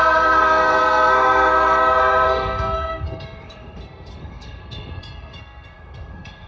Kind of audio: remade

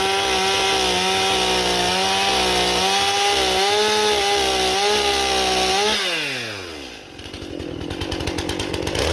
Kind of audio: recorded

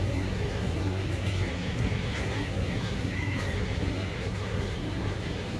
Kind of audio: remade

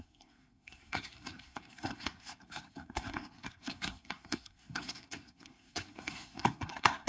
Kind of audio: remade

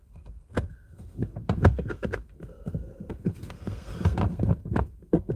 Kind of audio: remade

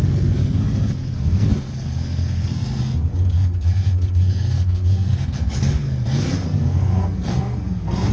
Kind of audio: remade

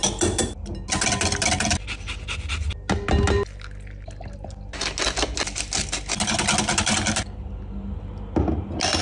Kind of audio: recorded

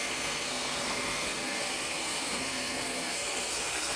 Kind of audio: remade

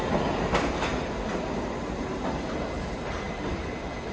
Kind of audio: recorded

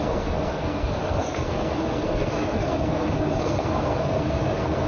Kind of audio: remade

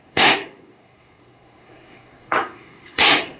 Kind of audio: remade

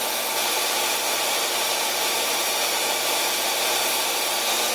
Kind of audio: recorded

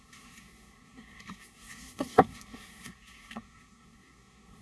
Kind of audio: remade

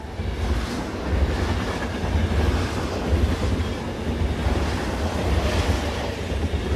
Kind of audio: recorded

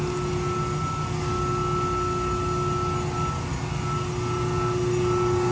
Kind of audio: recorded